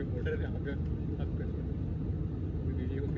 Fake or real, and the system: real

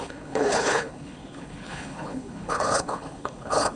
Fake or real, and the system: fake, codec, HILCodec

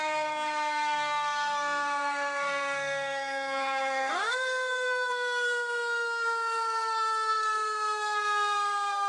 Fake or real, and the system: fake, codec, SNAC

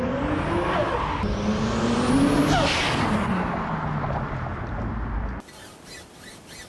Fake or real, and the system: real